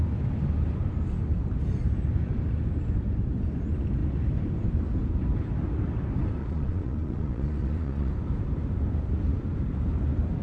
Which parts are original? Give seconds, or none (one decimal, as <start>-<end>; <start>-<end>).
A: 0.0-6.4; 8.1-10.4